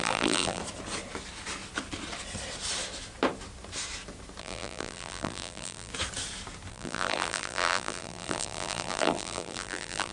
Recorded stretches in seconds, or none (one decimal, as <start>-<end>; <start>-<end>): 0.6-4.4; 5.9-6.7